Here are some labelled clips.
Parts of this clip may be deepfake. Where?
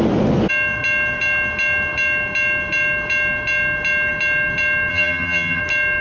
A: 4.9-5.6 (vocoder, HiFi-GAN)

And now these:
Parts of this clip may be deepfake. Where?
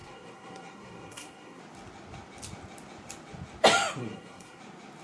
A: 0.0-1.6 (codec, SNAC); 4.0-4.6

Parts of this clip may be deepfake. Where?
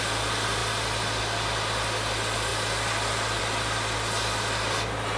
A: none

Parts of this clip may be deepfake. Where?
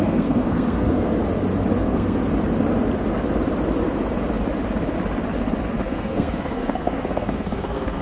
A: 0.0-1.2 (codec, SNAC); 1.7-2.2; 5.7-8.0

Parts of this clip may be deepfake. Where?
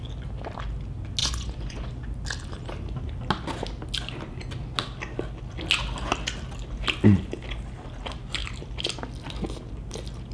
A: 1.2-1.9 (vocoder, Vocos)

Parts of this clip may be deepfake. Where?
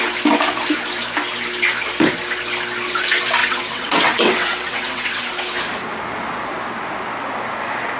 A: 3.4-5.2 (vocoder, WaveNeXt)